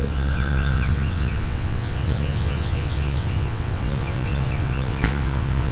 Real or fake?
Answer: fake